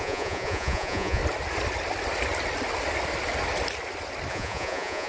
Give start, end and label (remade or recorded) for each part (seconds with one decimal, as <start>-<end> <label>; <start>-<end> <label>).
0.0-1.2 remade; 1.2-4.3 recorded; 4.3-5.1 remade